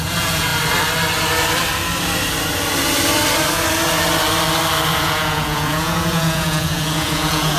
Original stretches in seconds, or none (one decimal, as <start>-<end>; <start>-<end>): 0.5-4.9